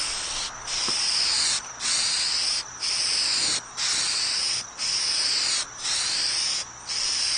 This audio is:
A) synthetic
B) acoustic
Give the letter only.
B